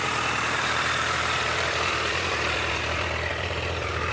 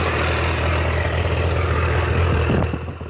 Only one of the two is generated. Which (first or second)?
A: first